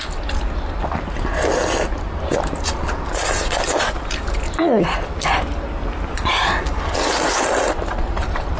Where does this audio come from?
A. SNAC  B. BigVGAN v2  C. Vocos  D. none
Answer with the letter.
D